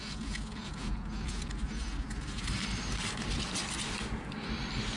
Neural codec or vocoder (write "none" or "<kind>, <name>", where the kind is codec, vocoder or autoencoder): none